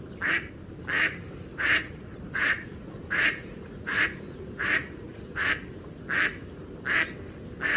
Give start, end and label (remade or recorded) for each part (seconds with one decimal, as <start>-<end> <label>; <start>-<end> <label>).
0.0-1.5 recorded; 1.5-5.5 remade; 5.5-7.8 recorded